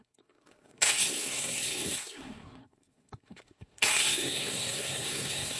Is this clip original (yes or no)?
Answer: no